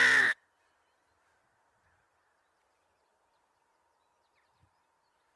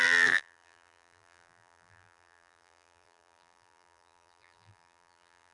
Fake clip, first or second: second